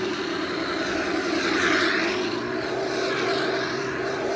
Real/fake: fake